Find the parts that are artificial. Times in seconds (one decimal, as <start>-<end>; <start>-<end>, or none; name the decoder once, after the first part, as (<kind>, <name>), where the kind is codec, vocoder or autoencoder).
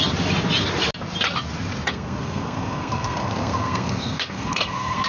1.9-5.1 (codec, SNAC)